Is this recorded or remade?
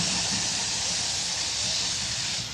remade